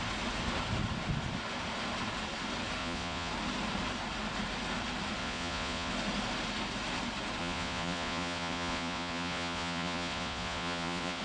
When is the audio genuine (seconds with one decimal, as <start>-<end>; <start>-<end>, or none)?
0.0-2.8; 3.3-5.2; 5.9-7.4

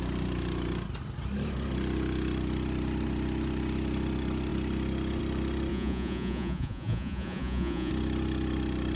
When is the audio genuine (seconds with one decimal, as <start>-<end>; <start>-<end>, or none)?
0.0-5.7; 7.9-9.0

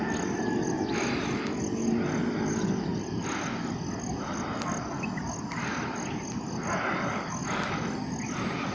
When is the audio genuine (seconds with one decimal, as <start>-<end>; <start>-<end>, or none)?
0.0-8.7

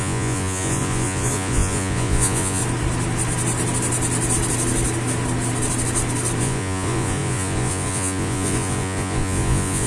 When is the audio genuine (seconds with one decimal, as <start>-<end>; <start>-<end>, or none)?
2.6-6.4

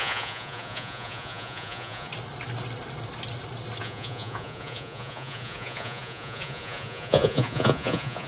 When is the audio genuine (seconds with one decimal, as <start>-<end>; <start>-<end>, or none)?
2.1-3.8

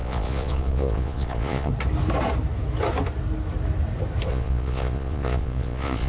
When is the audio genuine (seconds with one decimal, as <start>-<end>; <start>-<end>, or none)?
1.7-4.3